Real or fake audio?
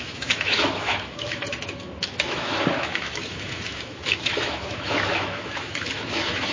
fake